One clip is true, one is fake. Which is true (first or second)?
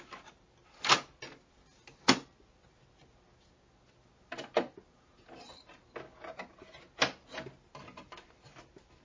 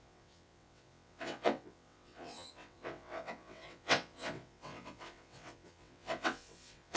first